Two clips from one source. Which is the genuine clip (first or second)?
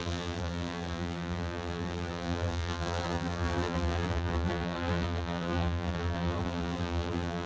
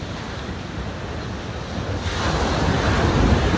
second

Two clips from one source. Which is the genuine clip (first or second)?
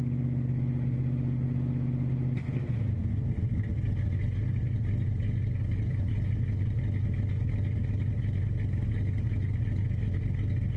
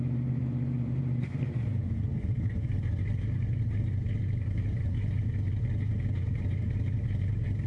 first